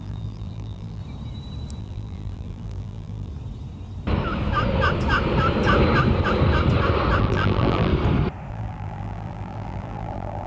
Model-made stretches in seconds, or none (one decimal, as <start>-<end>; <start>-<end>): 0.0-1.0; 1.8-3.3; 7.2-7.9; 8.5-10.5